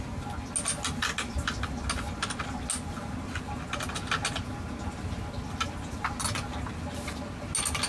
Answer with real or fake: real